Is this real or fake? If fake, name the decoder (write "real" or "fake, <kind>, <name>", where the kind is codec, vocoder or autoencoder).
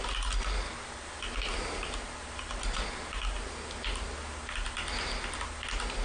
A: real